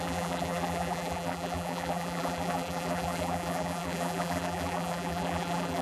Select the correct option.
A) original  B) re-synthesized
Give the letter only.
B